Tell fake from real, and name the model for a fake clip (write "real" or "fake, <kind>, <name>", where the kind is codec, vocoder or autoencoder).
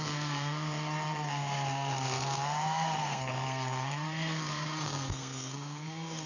fake, codec, SNAC